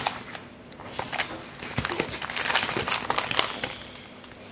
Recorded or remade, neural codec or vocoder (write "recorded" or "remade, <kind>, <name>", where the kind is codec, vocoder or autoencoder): recorded